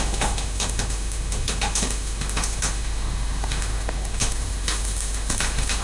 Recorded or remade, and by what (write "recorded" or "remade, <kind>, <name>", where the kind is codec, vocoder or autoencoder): remade, autoencoder, DAC-VAE